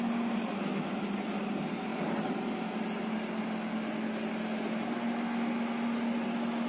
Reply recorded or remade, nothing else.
recorded